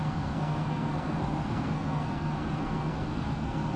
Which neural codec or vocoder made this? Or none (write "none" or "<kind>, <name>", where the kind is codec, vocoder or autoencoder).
codec, SNAC